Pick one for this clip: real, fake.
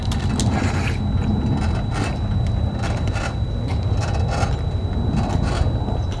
real